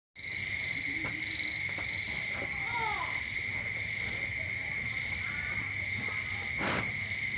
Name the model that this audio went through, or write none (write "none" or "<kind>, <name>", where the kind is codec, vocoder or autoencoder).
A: none